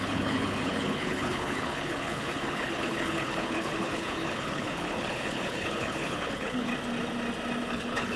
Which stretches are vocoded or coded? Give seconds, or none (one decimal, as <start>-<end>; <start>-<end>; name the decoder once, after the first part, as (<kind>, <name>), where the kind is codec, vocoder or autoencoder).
0.0-6.7 (codec, HILCodec); 7.7-8.2